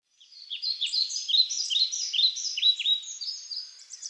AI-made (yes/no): yes